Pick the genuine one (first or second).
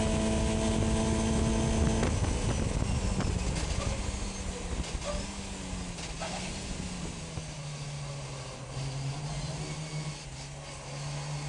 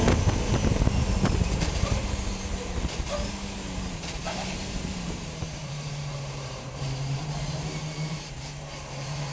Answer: first